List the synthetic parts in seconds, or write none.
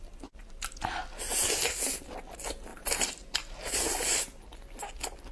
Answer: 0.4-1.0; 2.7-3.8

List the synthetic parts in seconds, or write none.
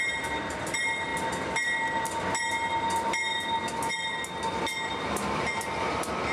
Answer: none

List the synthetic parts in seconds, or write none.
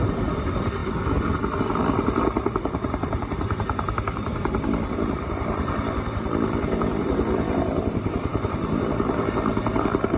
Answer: 0.0-0.8; 1.6-10.2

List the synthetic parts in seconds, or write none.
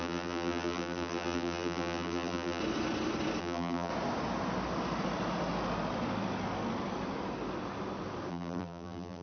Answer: 0.0-2.6; 3.4-3.9; 8.3-9.2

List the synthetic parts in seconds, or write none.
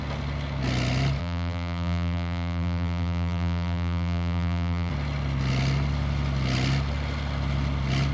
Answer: 1.2-4.9